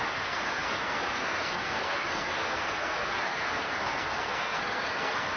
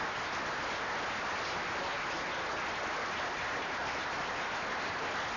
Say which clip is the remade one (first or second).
first